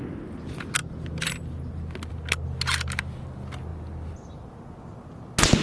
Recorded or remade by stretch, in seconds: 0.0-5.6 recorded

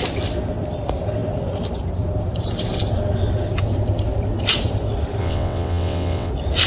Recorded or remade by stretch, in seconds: 0.0-5.2 recorded; 5.2-6.3 remade; 6.3-6.7 recorded

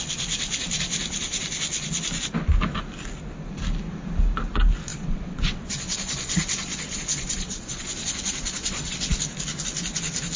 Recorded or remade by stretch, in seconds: 0.0-4.9 recorded; 4.9-9.2 remade; 9.2-10.4 recorded

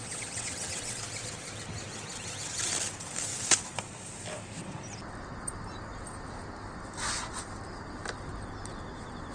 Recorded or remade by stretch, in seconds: 0.0-1.0 remade; 1.0-9.3 recorded

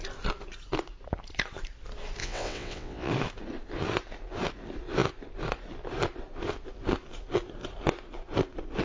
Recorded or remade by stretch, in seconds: 0.0-2.2 recorded; 2.2-3.1 remade; 3.1-8.8 recorded

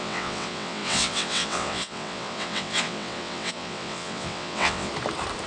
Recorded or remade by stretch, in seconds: 0.0-4.9 remade; 4.9-5.5 recorded

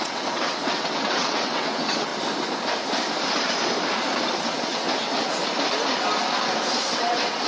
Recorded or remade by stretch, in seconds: 0.0-2.1 remade; 2.1-4.4 recorded; 4.4-5.4 remade; 5.4-7.0 recorded; 7.0-7.5 remade